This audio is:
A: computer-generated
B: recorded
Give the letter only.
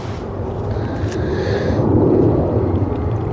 B